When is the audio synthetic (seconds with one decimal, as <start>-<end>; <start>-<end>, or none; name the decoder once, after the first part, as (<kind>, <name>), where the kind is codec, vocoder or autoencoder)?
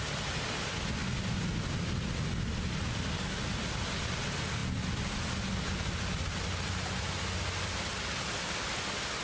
none